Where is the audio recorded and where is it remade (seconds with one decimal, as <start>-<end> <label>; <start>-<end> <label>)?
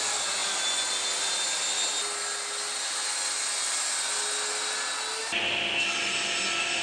0.0-6.8 recorded